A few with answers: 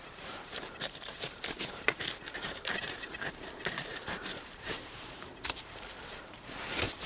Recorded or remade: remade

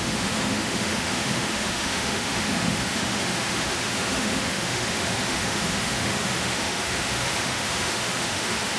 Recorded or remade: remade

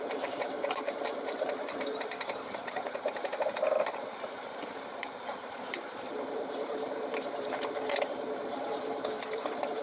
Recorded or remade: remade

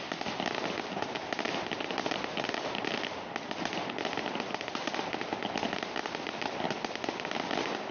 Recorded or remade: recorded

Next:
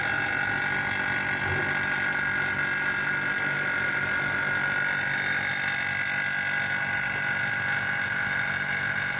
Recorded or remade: recorded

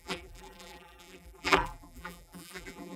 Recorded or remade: remade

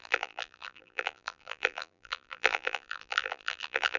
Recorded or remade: remade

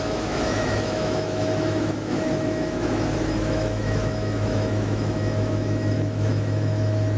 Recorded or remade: remade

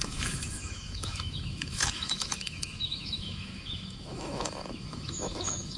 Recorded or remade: remade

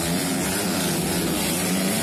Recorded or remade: recorded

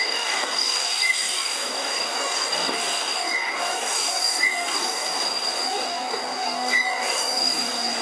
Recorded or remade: remade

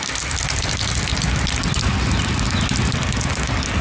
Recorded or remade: recorded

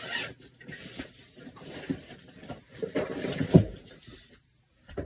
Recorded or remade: remade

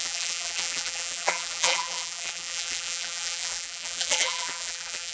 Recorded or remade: remade